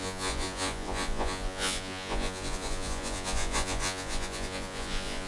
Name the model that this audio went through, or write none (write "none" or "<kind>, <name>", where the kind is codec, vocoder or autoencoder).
vocoder, Vocos